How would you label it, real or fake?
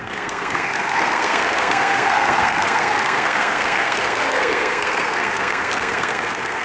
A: fake